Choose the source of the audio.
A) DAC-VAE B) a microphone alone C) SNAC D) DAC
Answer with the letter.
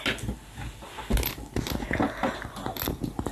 B